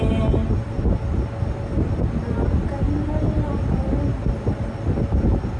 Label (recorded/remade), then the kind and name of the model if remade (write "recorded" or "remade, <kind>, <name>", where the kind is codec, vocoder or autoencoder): recorded